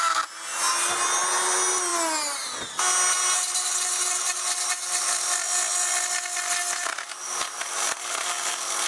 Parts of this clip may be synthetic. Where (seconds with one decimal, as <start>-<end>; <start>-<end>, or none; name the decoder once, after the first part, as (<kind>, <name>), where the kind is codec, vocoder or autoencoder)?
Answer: none